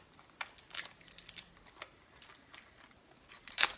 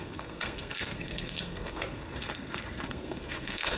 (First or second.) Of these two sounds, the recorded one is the first